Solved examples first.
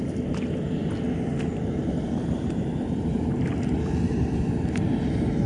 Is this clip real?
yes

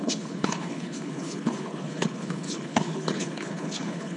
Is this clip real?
no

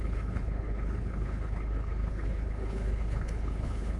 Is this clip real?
no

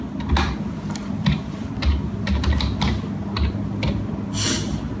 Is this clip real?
yes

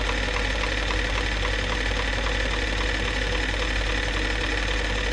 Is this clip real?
yes